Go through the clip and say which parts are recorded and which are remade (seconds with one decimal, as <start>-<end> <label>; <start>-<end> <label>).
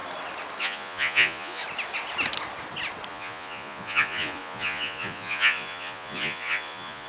0.0-0.6 recorded; 0.6-1.6 remade; 1.6-3.1 recorded; 3.1-7.1 remade